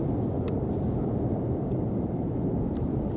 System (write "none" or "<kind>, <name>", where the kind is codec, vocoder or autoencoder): vocoder, BigVGAN v2